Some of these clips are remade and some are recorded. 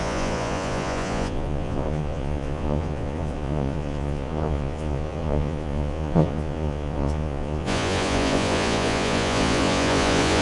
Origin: remade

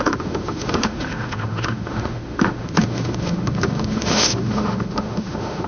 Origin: remade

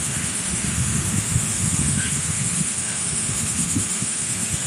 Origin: remade